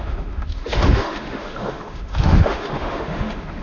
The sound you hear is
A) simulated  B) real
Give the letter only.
A